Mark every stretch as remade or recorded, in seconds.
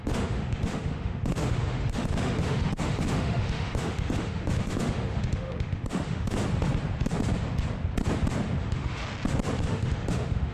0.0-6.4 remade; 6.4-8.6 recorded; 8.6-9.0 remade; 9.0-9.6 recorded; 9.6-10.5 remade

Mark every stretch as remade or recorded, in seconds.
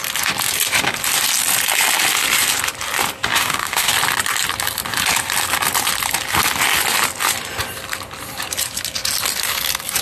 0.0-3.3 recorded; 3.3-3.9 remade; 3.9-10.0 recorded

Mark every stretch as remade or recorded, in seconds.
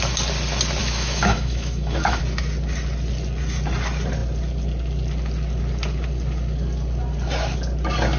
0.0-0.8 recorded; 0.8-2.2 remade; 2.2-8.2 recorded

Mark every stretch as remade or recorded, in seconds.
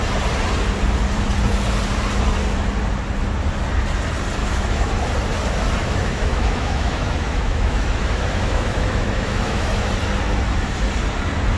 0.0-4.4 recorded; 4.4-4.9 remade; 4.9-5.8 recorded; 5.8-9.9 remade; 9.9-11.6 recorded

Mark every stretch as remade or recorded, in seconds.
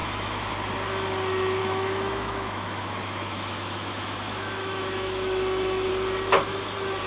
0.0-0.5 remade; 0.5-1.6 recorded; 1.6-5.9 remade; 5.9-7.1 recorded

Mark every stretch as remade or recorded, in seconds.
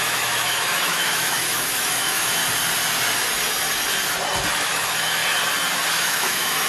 0.0-2.4 remade; 2.4-4.5 recorded; 4.5-5.2 remade; 5.2-5.9 recorded; 5.9-6.7 remade